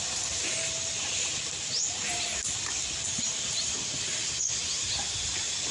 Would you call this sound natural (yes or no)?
yes